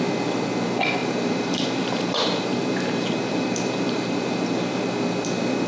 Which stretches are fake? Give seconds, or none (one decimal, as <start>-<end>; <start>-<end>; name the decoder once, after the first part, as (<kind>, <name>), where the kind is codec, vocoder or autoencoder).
1.0-4.4 (vocoder, BigVGAN v2)